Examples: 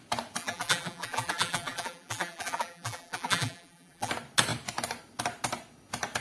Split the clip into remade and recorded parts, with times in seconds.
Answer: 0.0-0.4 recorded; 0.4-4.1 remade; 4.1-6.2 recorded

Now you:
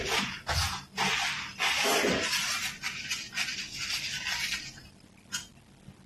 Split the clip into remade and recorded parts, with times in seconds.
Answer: 0.0-6.1 recorded